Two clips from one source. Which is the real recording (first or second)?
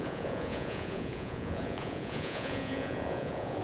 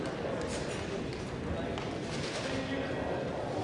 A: second